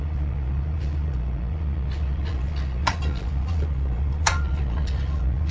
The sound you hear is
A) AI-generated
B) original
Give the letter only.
A